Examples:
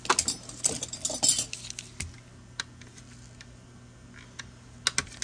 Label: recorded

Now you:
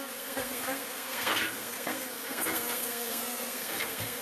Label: remade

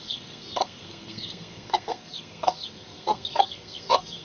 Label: remade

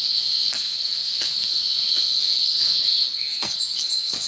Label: remade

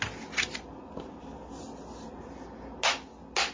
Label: recorded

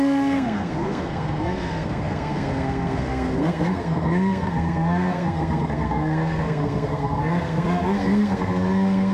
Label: remade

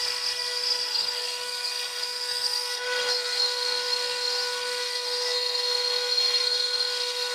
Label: remade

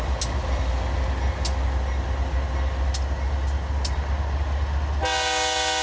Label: recorded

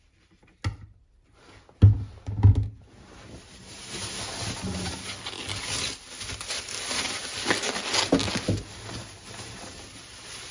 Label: recorded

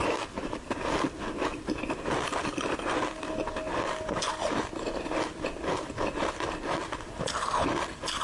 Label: recorded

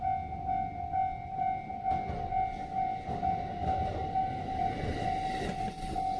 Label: recorded